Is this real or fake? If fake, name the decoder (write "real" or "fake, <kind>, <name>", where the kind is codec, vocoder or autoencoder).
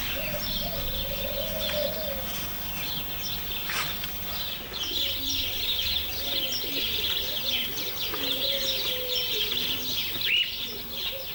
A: real